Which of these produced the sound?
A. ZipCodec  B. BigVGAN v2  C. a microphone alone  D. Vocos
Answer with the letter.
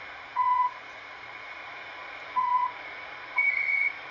D